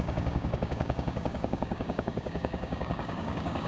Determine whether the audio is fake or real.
fake